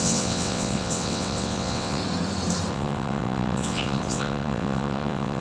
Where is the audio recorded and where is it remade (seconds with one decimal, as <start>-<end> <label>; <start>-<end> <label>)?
0.0-2.0 remade; 2.0-2.7 recorded; 2.7-5.4 remade

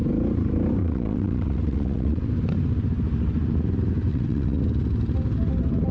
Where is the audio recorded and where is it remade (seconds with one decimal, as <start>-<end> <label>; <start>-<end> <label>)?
0.0-0.8 recorded; 0.8-2.3 remade; 2.3-4.1 recorded; 4.1-4.6 remade; 4.6-5.9 recorded

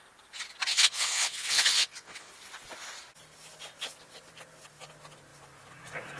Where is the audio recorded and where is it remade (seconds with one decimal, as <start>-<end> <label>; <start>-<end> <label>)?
0.0-0.7 recorded; 0.7-2.3 remade; 2.3-6.2 recorded

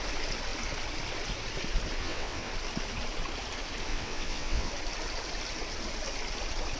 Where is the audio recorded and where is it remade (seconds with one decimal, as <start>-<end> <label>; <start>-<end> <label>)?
0.0-2.0 recorded; 2.0-2.5 remade; 2.5-3.9 recorded; 3.9-4.7 remade; 4.7-6.8 recorded

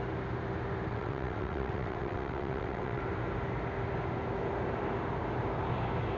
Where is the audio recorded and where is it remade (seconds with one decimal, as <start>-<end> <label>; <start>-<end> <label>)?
0.0-0.9 recorded; 0.9-3.0 remade; 3.0-6.2 recorded

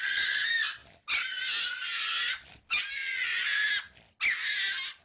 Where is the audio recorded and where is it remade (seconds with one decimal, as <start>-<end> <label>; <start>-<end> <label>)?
0.0-5.0 recorded

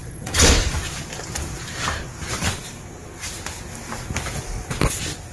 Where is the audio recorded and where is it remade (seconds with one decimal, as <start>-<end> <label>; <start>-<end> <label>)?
0.0-0.7 remade; 0.7-5.3 recorded

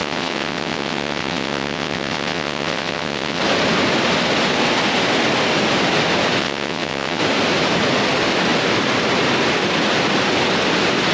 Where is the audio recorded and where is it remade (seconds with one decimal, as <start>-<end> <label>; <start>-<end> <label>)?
0.0-3.4 remade; 3.4-6.4 recorded; 6.4-7.2 remade; 7.2-11.1 recorded